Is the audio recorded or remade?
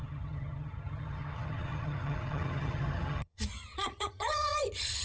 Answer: remade